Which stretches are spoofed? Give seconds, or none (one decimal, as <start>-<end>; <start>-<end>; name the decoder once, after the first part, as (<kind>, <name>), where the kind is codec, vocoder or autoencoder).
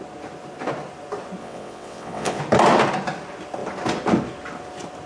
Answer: 1.4-2.4 (vocoder, WaveNeXt)